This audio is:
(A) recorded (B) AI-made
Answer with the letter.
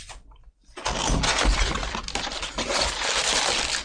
A